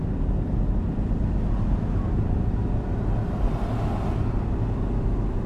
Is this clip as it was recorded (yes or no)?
yes